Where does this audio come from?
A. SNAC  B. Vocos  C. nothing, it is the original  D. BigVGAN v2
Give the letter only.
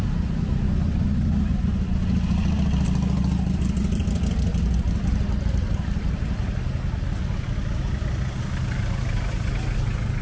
C